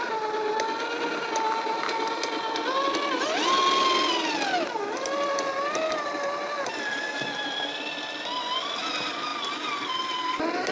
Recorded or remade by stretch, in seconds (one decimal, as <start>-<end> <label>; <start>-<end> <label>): 0.0-10.7 recorded